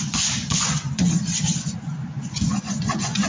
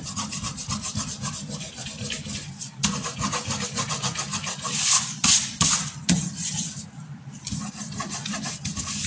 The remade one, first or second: first